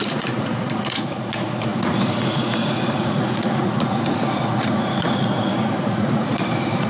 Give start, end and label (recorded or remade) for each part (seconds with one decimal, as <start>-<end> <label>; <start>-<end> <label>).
0.0-6.9 remade